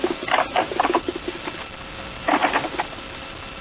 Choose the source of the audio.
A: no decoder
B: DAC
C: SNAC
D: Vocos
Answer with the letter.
A